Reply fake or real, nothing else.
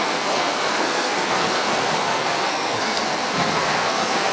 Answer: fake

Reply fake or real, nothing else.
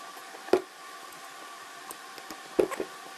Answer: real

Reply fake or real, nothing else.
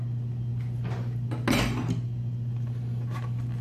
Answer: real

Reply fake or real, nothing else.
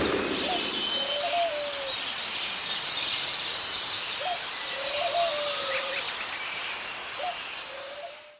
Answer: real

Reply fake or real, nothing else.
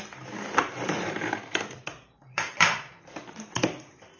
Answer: fake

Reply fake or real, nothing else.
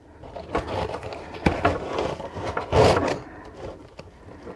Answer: real